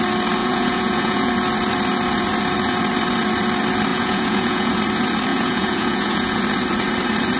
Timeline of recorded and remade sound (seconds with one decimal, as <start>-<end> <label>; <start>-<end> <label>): 0.0-0.4 recorded; 0.4-1.3 remade; 1.3-3.9 recorded; 3.9-4.7 remade; 4.7-5.3 recorded; 5.3-6.4 remade; 6.4-7.4 recorded